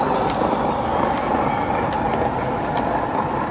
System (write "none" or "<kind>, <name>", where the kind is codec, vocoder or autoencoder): none